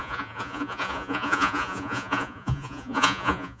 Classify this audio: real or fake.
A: fake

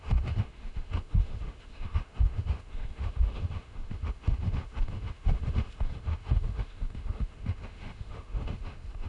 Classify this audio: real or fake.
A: fake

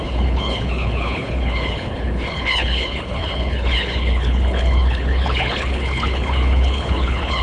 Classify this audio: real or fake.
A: fake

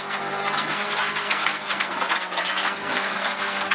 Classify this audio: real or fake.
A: fake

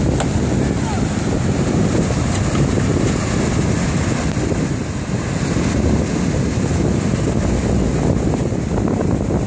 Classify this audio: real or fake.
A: real